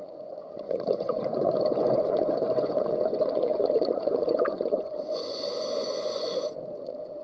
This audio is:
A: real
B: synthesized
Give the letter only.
B